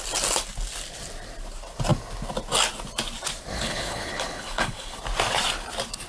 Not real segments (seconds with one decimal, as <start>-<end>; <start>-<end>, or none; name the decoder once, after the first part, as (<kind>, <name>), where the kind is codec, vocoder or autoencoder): 3.5-5.0 (codec, HILCodec)